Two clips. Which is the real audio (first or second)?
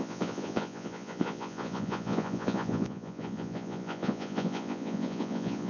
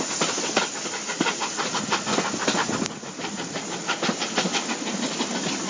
second